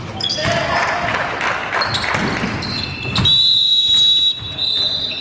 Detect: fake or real real